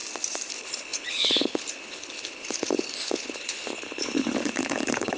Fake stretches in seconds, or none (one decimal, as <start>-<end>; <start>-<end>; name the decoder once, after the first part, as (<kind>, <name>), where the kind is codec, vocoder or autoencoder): 0.5-5.2 (codec, HILCodec)